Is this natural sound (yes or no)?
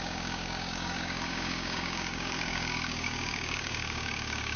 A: no